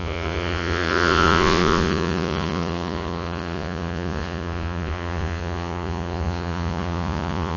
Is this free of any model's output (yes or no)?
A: no